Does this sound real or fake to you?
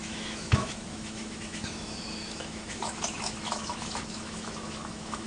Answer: fake